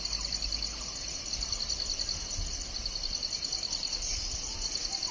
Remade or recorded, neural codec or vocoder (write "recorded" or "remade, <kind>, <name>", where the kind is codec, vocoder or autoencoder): recorded